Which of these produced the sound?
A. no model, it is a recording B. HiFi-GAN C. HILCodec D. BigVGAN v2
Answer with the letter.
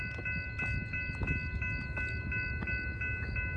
A